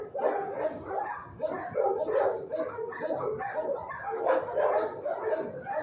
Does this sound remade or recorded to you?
recorded